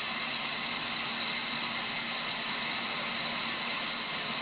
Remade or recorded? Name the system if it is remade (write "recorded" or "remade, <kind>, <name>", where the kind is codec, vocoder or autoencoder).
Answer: recorded